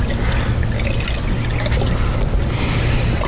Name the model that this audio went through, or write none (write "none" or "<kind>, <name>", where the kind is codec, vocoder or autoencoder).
none